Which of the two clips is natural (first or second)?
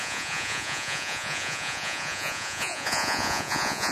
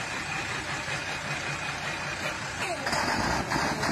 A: second